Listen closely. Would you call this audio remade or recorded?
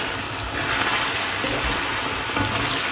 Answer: recorded